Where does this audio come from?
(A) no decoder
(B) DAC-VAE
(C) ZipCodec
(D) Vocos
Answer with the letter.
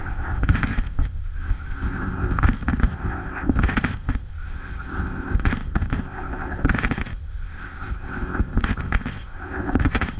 C